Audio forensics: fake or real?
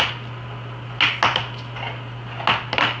real